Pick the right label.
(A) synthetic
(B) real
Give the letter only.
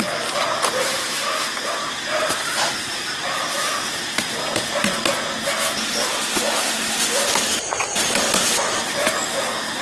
B